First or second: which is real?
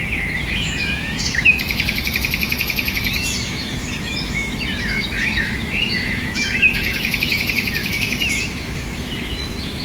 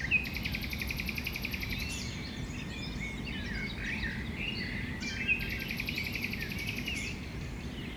second